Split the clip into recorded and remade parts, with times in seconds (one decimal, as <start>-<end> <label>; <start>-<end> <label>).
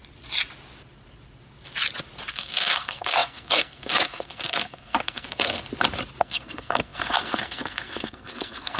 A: 0.0-2.3 recorded; 2.3-5.6 remade; 5.6-6.2 recorded; 6.2-8.8 remade